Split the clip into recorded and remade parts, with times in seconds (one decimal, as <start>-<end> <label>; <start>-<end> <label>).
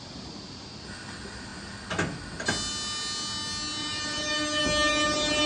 0.0-3.8 recorded; 3.8-4.6 remade; 4.6-5.5 recorded